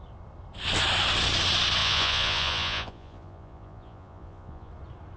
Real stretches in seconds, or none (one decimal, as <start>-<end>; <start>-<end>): 0.0-1.8; 4.7-5.2